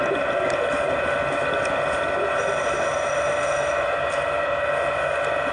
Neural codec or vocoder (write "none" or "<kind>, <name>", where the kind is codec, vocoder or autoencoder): none